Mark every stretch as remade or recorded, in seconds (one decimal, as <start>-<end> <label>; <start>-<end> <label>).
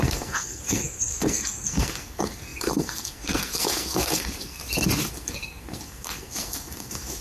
0.0-4.6 remade; 4.6-5.1 recorded; 5.1-7.2 remade